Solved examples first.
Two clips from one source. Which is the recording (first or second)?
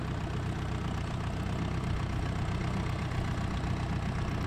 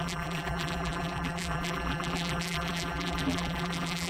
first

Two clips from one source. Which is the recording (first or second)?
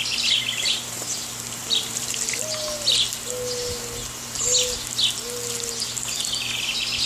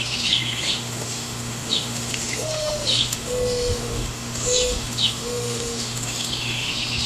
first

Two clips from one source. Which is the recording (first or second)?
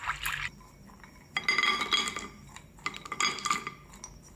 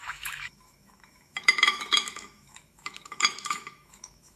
first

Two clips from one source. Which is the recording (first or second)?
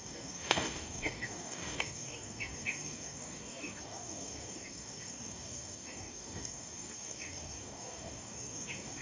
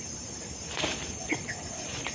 second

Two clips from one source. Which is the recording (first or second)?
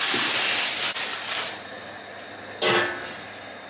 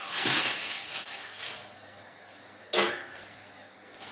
first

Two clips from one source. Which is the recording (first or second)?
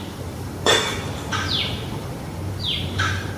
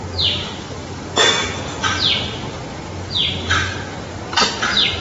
second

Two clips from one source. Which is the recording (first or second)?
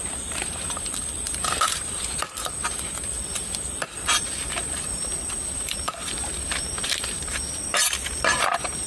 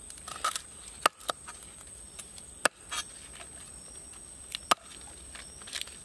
second